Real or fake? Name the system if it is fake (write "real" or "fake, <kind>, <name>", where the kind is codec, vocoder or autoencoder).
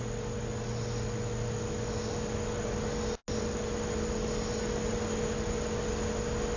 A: real